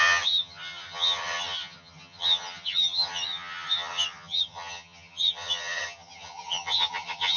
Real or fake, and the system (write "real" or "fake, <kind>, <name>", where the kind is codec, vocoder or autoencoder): fake, vocoder, HiFi-GAN